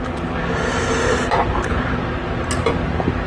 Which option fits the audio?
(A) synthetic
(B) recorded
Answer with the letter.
B